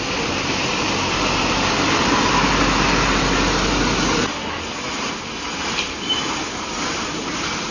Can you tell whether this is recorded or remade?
recorded